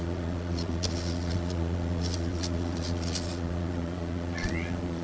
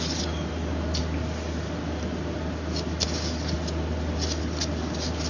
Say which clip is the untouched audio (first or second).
second